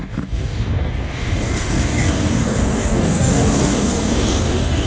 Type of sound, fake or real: fake